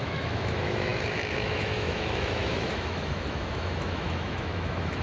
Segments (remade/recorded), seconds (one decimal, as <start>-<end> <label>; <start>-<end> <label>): 0.0-5.0 remade

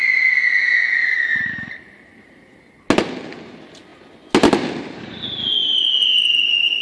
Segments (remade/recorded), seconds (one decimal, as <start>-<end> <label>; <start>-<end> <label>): 0.0-1.0 recorded; 1.0-2.6 remade; 2.6-5.6 recorded; 5.6-6.3 remade; 6.3-6.8 recorded

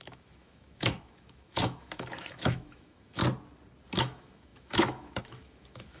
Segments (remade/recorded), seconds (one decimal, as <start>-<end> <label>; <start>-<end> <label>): 0.0-3.2 remade; 3.2-4.0 recorded; 4.0-6.0 remade